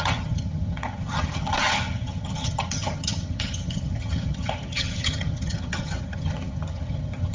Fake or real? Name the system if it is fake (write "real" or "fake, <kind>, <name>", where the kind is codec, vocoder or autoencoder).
fake, vocoder, HiFi-GAN